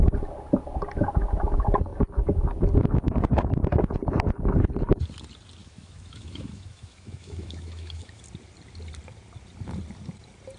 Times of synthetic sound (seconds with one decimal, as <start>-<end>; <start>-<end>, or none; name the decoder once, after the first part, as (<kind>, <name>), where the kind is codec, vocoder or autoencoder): 5.6-8.2 (autoencoder, DAC-VAE)